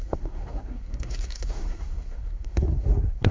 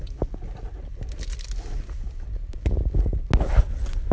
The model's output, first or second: first